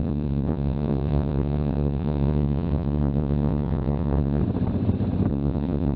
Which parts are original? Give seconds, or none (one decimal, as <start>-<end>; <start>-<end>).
4.4-5.3